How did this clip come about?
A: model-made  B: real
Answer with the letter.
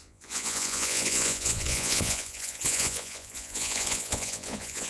A